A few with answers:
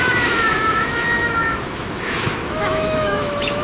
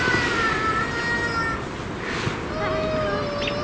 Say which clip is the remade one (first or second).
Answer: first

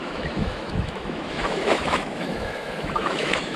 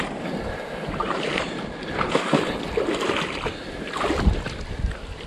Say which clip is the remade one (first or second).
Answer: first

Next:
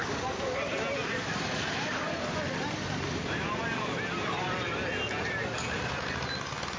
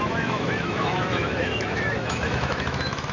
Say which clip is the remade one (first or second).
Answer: second